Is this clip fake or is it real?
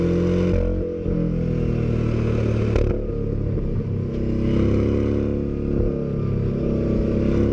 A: real